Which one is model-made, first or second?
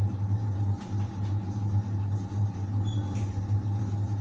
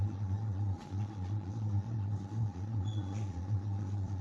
second